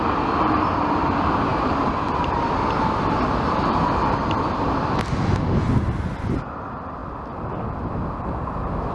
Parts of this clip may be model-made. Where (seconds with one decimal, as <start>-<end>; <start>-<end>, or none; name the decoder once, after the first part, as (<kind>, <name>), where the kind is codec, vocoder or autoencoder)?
none